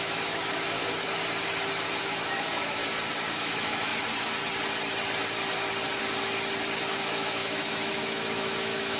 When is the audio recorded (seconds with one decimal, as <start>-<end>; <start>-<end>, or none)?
0.8-2.0; 2.8-3.3; 3.9-6.9